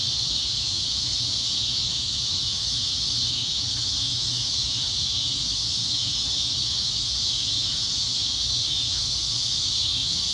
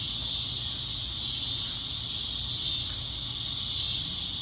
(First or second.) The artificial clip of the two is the first